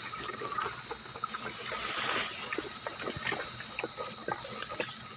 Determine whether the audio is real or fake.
real